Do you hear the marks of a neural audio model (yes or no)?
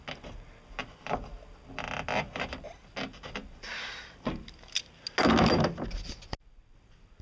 no